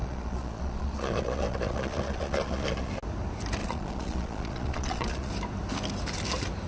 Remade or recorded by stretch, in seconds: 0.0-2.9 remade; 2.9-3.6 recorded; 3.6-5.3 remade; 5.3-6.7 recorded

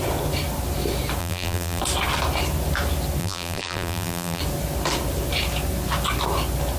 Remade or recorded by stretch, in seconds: 0.0-1.2 recorded; 1.2-1.8 remade; 1.8-3.2 recorded; 3.2-4.4 remade; 4.4-6.8 recorded